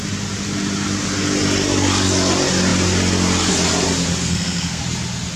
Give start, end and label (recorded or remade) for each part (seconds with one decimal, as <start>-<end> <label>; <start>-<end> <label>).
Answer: 0.0-4.2 recorded; 4.2-4.8 remade; 4.8-5.4 recorded